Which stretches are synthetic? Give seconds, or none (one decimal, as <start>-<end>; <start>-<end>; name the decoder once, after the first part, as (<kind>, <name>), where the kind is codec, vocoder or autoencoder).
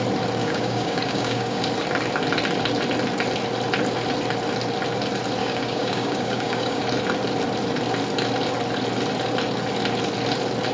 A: 0.4-1.6 (codec, DAC); 5.4-6.8